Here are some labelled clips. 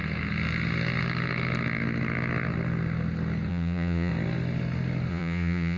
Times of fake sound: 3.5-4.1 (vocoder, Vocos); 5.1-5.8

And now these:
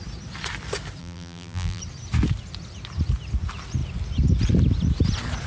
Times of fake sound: 1.0-1.8 (vocoder, BigVGAN v2)

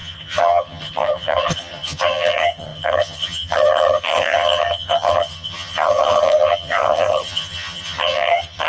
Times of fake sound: 0.0-8.7 (vocoder, HiFi-GAN)